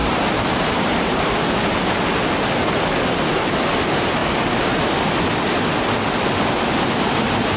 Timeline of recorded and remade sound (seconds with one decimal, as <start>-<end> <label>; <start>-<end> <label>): 0.0-0.5 remade; 0.5-7.6 recorded